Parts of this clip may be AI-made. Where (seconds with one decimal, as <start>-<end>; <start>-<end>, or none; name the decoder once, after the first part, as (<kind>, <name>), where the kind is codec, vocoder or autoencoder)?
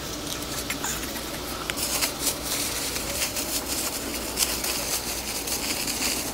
0.0-4.1 (vocoder, BigVGAN v2)